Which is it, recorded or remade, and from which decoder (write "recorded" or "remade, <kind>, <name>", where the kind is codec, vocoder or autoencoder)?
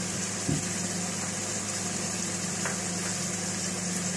recorded